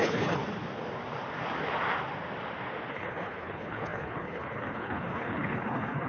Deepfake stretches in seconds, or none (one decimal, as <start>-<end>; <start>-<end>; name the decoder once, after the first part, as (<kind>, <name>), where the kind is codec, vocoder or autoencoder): 0.0-0.4 (codec, HILCodec); 2.9-6.1